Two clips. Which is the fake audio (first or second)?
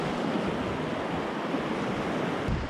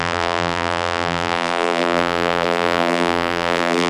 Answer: second